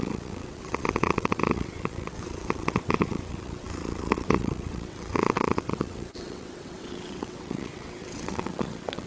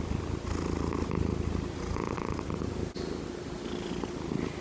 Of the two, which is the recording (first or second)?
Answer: second